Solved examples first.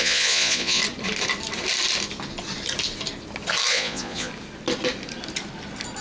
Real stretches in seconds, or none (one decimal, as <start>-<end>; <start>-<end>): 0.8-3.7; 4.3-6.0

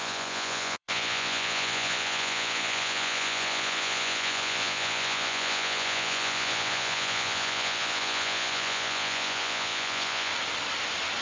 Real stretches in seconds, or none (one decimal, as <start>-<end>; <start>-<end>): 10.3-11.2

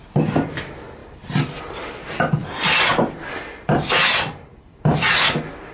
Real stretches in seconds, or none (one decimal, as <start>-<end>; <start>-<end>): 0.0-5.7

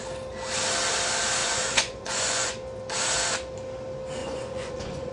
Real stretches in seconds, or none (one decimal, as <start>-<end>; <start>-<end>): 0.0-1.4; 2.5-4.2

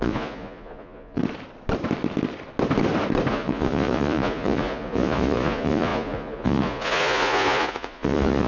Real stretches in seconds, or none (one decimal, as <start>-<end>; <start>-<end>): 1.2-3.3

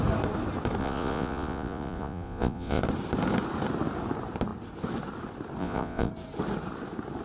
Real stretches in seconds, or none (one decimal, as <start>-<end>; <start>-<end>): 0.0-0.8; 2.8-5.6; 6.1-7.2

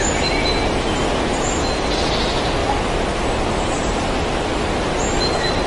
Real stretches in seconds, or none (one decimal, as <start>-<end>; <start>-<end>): 0.0-5.7